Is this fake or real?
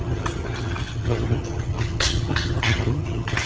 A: fake